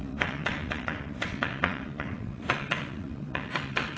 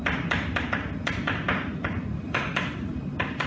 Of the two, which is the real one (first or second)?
second